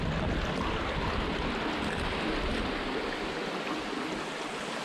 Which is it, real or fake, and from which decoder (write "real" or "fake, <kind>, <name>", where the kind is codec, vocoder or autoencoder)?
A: real